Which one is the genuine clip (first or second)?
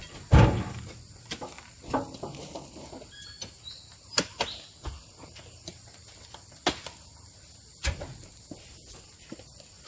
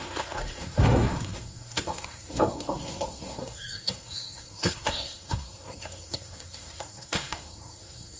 first